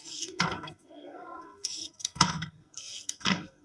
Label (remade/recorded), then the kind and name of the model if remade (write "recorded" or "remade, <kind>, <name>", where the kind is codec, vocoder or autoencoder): remade, codec, SNAC